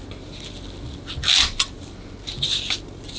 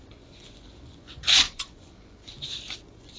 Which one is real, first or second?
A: first